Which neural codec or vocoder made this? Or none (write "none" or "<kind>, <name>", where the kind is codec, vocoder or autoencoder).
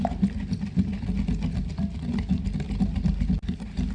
none